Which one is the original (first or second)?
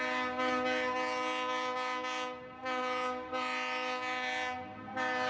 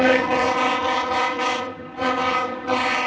first